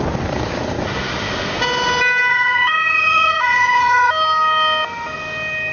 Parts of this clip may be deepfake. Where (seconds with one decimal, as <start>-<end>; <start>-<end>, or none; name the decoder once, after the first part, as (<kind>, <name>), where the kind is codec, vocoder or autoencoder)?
2.3-4.1 (vocoder, Vocos)